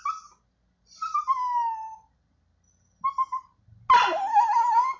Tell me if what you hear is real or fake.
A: real